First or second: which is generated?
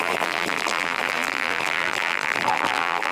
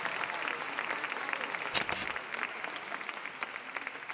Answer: first